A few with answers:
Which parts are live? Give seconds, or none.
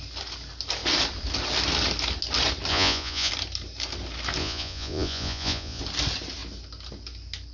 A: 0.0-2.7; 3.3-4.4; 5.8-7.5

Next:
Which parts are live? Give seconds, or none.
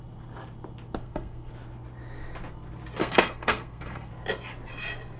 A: 0.0-1.0; 1.5-3.0; 4.1-5.2